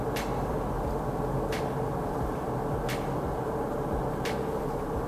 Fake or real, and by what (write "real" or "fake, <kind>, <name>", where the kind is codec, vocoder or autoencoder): real